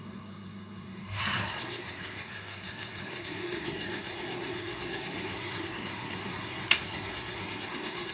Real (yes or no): no